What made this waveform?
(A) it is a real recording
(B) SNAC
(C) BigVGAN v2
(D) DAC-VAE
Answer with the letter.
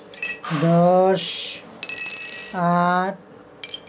A